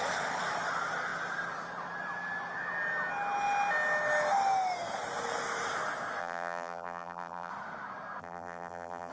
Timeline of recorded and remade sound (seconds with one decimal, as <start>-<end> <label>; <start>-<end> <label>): 0.0-6.2 recorded; 6.2-7.5 remade; 7.5-8.2 recorded; 8.2-9.1 remade